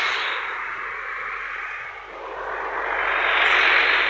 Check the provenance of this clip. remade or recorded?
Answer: recorded